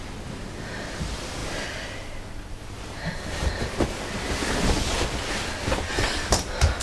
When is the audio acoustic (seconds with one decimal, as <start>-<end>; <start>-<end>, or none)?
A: 0.0-1.4; 4.5-6.8